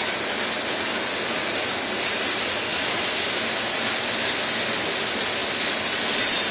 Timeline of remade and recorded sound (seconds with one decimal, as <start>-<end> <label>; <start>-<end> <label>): 0.0-6.5 recorded